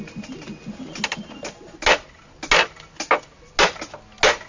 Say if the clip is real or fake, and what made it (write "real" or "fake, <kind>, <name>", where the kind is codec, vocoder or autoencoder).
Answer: real